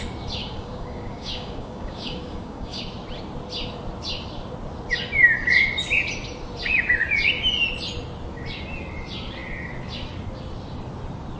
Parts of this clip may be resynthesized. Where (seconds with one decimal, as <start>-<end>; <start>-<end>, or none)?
0.4-2.8